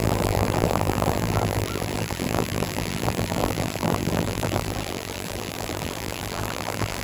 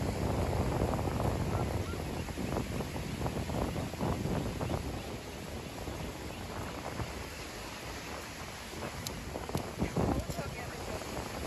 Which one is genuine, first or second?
second